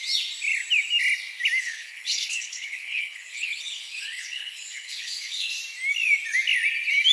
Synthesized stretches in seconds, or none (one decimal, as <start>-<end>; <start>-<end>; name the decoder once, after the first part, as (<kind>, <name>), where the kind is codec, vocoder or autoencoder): 1.6-5.6 (codec, HILCodec)